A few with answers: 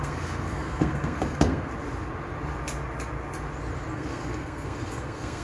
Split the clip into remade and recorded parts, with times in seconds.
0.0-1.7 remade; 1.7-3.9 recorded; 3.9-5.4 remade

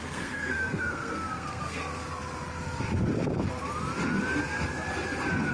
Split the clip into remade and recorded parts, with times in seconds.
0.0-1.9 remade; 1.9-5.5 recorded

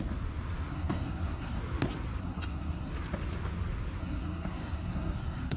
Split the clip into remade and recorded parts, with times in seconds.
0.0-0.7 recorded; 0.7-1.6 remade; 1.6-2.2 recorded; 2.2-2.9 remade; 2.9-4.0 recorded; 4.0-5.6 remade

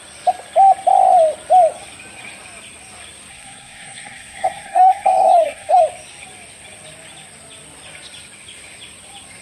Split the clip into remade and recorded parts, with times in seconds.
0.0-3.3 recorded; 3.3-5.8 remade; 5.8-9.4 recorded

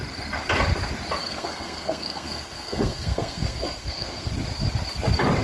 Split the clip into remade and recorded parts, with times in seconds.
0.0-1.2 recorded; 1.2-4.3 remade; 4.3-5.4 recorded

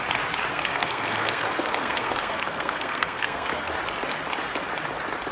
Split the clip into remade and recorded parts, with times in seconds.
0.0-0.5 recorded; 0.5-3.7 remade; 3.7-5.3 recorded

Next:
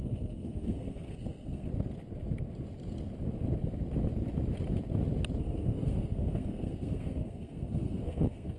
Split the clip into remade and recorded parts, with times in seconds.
0.0-1.7 remade; 1.7-5.4 recorded; 5.4-8.6 remade

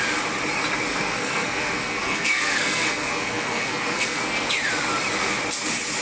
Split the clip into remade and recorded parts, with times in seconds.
0.0-0.9 recorded; 0.9-4.5 remade; 4.5-6.0 recorded